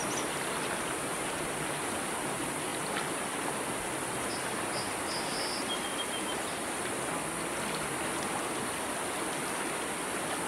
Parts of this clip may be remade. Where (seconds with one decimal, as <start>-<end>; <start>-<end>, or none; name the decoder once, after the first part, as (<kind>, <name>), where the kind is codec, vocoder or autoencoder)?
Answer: none